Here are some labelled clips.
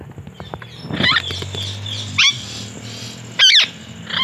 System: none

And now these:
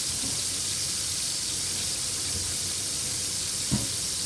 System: none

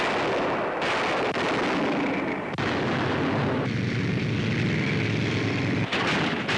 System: none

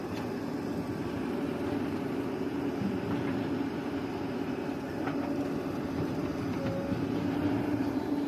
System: none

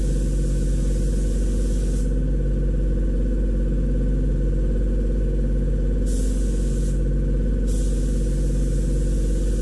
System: none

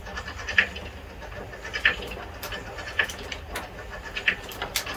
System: none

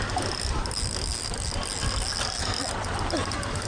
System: none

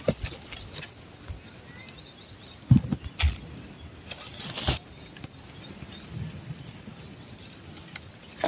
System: none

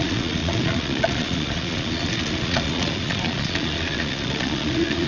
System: vocoder, Vocos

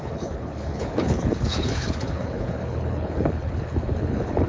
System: codec, HILCodec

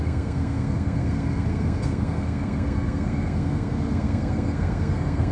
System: codec, SNAC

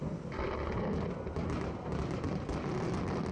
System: none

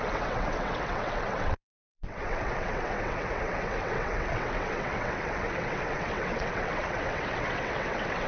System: vocoder, WaveNeXt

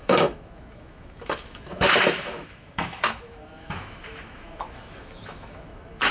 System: autoencoder, DAC-VAE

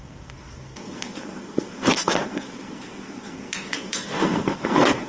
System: codec, SNAC